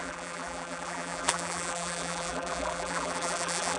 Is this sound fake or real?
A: fake